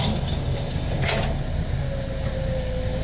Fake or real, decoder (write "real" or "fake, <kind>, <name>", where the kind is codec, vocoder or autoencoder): real